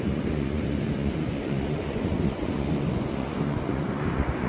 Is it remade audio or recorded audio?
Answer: remade